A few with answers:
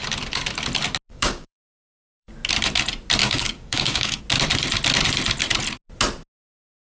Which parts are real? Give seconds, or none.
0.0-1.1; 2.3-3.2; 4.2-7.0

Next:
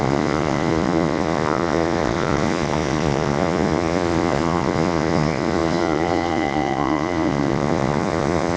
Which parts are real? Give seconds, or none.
none